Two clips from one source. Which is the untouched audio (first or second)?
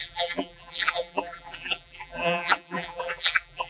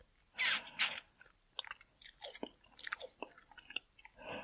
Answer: second